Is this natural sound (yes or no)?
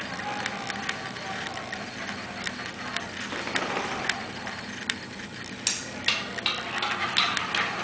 yes